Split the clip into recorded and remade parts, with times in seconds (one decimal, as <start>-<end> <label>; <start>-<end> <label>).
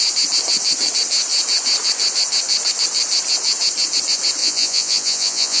0.0-4.4 recorded; 4.4-5.6 remade